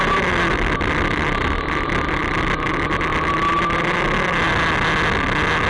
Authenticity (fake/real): real